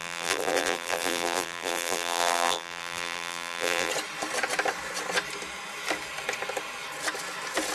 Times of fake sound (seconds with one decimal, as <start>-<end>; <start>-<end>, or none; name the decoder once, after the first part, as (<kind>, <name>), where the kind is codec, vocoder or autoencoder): 0.0-3.9 (vocoder, BigVGAN v2)